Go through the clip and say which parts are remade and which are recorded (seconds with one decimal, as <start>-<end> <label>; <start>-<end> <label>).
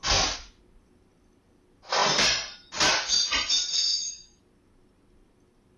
0.0-3.7 recorded; 3.7-4.4 remade; 4.4-5.8 recorded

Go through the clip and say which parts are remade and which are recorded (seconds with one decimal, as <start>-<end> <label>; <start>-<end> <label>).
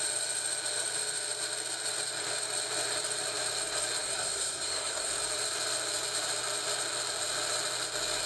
0.0-4.0 recorded; 4.0-5.1 remade; 5.1-8.3 recorded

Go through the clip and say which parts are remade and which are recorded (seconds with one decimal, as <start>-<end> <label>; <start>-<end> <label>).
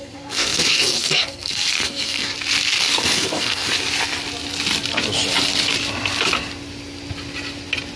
0.0-2.3 remade; 2.3-2.8 recorded; 2.8-3.7 remade; 3.7-8.0 recorded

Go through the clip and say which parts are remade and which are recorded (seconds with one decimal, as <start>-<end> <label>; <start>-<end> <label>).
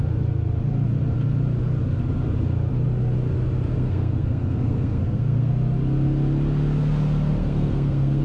0.0-3.7 recorded; 3.7-5.5 remade; 5.5-7.4 recorded; 7.4-8.2 remade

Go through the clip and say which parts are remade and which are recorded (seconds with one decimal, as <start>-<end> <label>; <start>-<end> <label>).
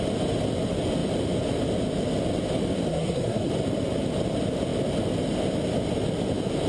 0.0-2.9 recorded; 2.9-3.5 remade; 3.5-6.7 recorded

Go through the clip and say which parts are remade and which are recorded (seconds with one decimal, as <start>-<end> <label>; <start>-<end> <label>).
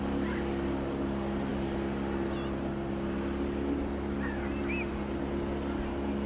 0.0-6.3 recorded